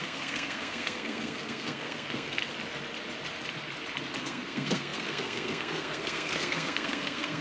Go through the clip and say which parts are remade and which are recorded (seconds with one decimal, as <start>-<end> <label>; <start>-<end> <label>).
0.0-2.4 remade; 2.4-4.2 recorded; 4.2-7.4 remade